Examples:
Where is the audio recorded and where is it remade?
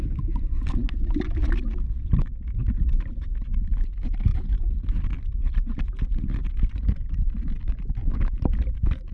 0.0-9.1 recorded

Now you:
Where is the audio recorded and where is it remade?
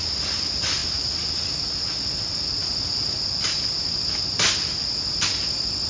0.0-5.9 recorded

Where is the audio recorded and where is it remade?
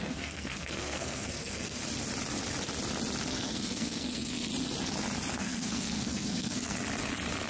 0.0-1.8 remade; 1.8-3.3 recorded; 3.3-4.5 remade; 4.5-5.4 recorded; 5.4-6.8 remade; 6.8-7.5 recorded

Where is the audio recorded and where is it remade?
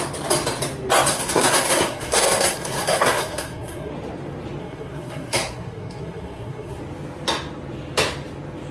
0.0-1.1 recorded; 1.1-3.9 remade; 3.9-4.6 recorded; 4.6-6.8 remade; 6.8-8.7 recorded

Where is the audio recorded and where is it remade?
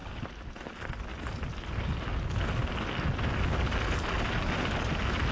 0.0-5.3 recorded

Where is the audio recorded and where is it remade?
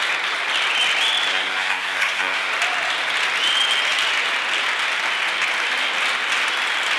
0.0-1.3 recorded; 1.3-2.5 remade; 2.5-7.0 recorded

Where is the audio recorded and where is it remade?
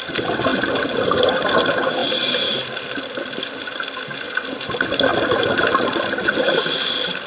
0.0-7.3 recorded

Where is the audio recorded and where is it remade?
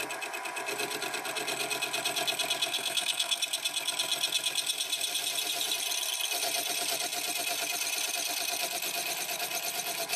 0.0-2.7 recorded; 2.7-3.4 remade; 3.4-10.2 recorded